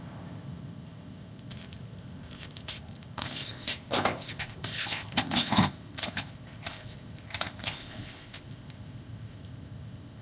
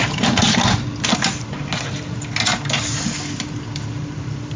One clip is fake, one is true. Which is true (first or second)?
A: second